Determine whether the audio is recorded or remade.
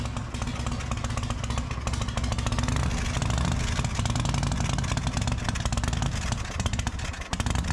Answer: recorded